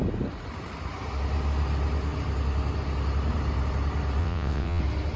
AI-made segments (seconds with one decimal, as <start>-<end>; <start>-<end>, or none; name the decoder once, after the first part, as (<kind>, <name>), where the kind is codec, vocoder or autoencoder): 4.2-4.8 (vocoder, WaveNeXt)